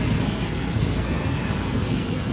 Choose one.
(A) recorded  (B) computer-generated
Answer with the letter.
B